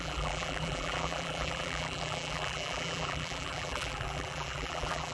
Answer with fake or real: fake